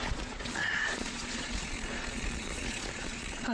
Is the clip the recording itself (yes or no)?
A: no